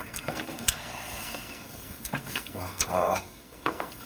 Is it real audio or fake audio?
fake